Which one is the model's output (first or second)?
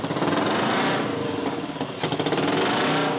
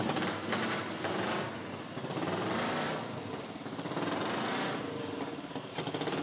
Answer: second